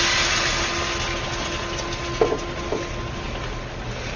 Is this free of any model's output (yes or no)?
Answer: yes